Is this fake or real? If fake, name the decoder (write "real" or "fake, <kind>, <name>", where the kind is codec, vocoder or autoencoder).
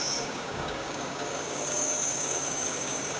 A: fake, codec, DAC